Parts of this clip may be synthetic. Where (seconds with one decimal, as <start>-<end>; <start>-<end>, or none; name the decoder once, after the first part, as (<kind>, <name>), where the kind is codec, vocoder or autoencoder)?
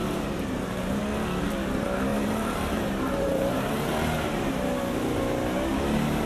0.0-1.0 (vocoder, BigVGAN v2); 2.1-4.4